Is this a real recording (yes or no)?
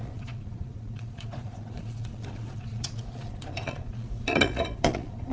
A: no